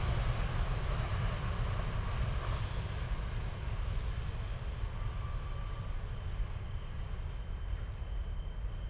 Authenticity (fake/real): real